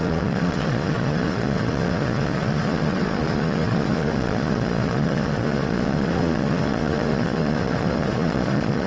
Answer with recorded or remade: remade